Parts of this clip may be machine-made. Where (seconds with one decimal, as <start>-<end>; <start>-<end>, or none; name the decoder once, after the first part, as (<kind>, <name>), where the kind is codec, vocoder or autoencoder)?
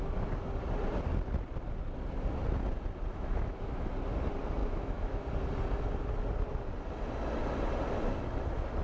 3.1-3.9 (autoencoder, DAC-VAE); 4.6-5.2